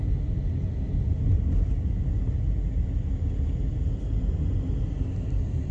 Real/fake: real